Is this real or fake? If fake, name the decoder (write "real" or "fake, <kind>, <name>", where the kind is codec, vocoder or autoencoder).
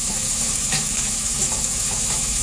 fake, autoencoder, DAC-VAE